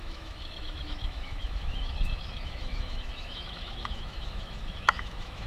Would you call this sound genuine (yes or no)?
no